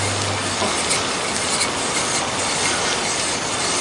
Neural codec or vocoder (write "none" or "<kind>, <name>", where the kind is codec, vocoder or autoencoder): none